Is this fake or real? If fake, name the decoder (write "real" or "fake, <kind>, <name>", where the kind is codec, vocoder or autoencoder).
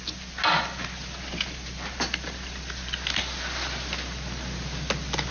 real